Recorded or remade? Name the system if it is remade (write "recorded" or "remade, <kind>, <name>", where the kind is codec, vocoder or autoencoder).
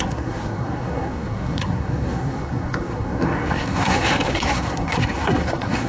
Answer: remade, codec, SNAC